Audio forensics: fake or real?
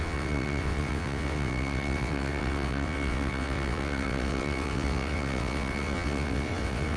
fake